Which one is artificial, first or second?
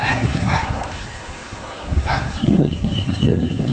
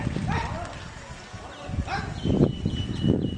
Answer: first